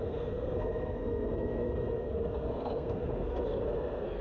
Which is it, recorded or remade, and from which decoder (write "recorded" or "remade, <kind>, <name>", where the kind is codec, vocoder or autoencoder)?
remade, codec, SNAC